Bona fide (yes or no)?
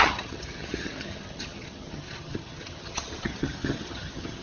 no